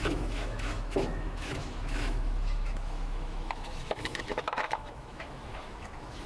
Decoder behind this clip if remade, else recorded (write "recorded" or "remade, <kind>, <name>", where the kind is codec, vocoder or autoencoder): remade, autoencoder, DAC-VAE